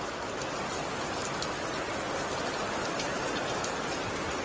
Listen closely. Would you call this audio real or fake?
real